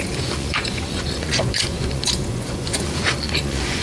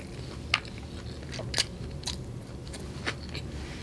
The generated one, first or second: first